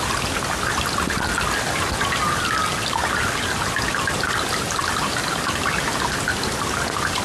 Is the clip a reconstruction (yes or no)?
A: no